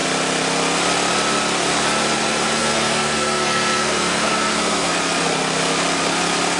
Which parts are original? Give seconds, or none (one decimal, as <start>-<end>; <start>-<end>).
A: 0.0-2.6; 4.9-6.6